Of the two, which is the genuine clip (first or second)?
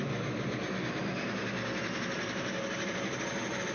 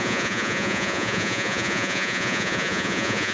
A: first